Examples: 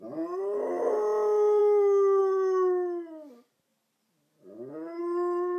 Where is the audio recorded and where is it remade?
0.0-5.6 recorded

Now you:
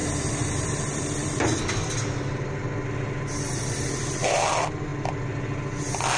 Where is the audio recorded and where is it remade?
0.0-1.3 remade; 1.3-6.2 recorded

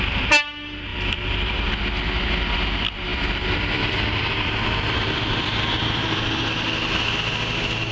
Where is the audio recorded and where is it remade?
0.0-0.9 recorded; 0.9-1.7 remade; 1.7-3.1 recorded; 3.1-6.4 remade; 6.4-7.9 recorded

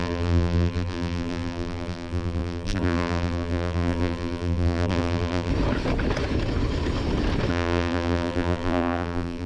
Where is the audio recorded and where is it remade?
0.0-5.5 remade; 5.5-7.5 recorded; 7.5-9.5 remade

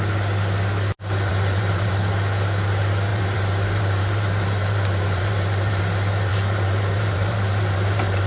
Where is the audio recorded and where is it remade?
0.0-1.3 recorded; 1.3-1.9 remade; 1.9-3.1 recorded; 3.1-5.8 remade; 5.8-6.3 recorded; 6.3-8.3 remade

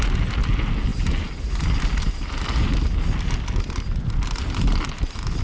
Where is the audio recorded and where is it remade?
0.0-5.4 recorded